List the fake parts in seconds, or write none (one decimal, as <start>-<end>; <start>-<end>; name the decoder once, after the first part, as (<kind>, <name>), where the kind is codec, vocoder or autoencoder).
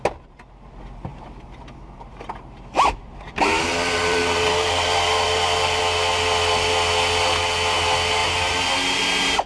1.1-5.8 (vocoder, BigVGAN v2)